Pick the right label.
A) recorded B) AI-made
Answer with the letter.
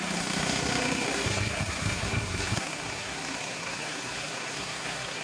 B